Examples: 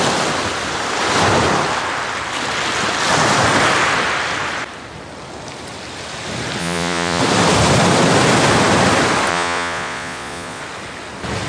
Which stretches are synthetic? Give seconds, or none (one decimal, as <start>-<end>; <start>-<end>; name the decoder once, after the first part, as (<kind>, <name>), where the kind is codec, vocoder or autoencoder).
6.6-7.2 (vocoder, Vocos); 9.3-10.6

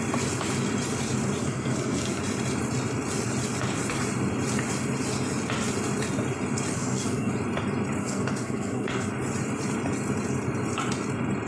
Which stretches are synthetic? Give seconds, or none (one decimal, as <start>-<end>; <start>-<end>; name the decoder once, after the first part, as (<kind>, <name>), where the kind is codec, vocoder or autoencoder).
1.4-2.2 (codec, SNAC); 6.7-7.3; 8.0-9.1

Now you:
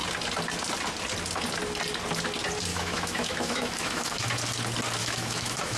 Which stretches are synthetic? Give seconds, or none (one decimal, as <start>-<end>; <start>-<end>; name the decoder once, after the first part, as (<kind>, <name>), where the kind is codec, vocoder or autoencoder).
2.7-4.4 (autoencoder, DAC-VAE); 5.0-5.8